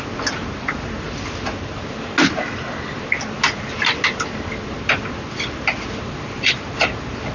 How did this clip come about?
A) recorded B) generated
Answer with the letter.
A